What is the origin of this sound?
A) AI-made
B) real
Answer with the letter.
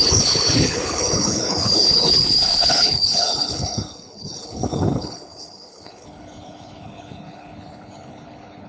A